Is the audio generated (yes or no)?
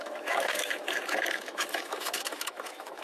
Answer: yes